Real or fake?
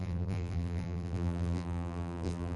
fake